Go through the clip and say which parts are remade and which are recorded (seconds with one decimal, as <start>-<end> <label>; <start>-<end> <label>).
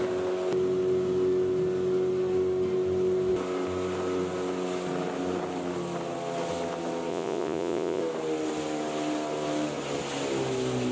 0.0-7.1 recorded; 7.1-8.0 remade; 8.0-10.9 recorded